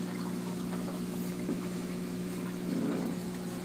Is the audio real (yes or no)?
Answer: no